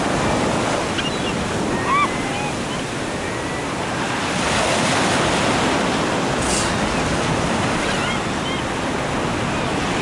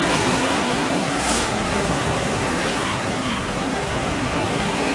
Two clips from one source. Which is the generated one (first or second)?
second